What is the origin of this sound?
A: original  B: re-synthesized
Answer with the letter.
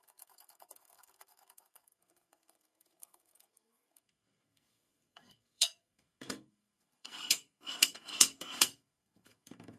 B